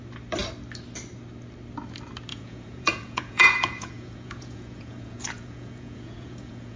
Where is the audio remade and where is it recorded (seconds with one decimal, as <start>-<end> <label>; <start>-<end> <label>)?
0.0-2.3 recorded; 2.3-6.8 remade